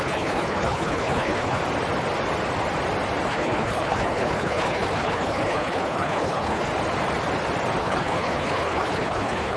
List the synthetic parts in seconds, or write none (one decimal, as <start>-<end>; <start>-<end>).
0.0-1.6; 3.3-6.7; 7.8-9.6